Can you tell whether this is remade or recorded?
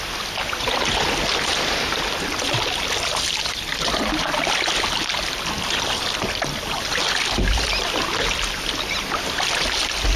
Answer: recorded